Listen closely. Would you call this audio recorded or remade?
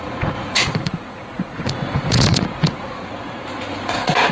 remade